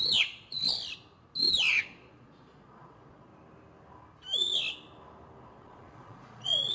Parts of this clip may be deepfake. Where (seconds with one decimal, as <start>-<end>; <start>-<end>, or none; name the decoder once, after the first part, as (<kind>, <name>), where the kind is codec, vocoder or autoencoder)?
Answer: 0.0-0.6 (vocoder, Vocos); 1.7-3.3; 5.5-6.7